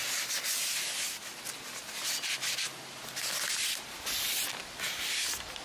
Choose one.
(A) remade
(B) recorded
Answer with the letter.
B